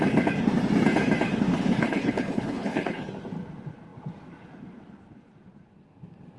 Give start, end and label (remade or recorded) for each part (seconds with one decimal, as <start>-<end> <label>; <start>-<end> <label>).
0.0-1.5 recorded; 1.5-3.1 remade; 3.1-6.4 recorded